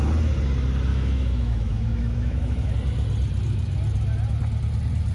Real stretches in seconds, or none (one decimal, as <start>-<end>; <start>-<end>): 0.0-0.9; 2.7-5.1